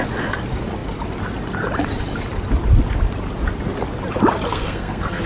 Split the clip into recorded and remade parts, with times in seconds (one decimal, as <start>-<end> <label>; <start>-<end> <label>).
0.0-4.5 recorded; 4.5-5.3 remade